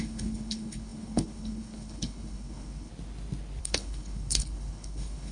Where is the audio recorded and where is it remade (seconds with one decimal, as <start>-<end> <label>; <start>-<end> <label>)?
0.0-2.9 remade; 2.9-3.6 recorded; 3.6-5.3 remade